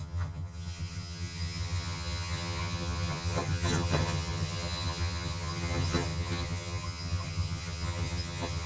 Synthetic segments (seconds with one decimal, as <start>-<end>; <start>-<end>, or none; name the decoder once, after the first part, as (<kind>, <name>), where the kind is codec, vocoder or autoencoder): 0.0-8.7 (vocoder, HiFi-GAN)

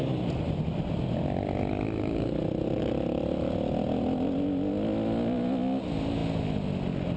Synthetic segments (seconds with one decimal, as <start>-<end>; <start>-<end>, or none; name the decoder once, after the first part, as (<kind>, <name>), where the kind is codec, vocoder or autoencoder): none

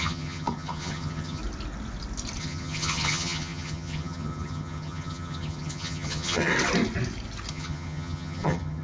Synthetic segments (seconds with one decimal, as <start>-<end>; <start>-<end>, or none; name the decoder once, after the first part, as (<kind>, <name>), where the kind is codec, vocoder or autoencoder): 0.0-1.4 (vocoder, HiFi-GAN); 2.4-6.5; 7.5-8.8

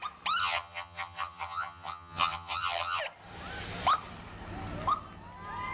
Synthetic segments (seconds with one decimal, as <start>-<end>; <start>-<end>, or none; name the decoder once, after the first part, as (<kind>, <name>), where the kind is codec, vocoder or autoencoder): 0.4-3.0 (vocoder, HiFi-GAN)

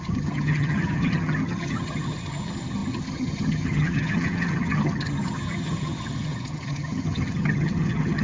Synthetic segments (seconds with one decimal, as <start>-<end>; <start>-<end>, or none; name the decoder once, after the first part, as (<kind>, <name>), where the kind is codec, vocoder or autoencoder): 0.0-8.2 (vocoder, HiFi-GAN)

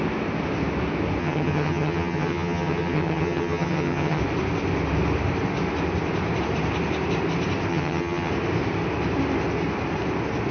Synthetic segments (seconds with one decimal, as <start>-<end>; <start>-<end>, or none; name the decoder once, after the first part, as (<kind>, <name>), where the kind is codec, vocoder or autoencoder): 1.2-4.2 (vocoder, HiFi-GAN); 7.7-8.3

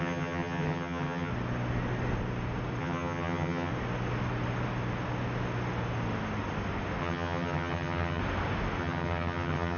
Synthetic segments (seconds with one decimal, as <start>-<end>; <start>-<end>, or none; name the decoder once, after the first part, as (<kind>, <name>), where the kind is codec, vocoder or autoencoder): 0.0-1.3 (vocoder, HiFi-GAN); 2.8-3.7; 7.0-8.2; 8.8-9.8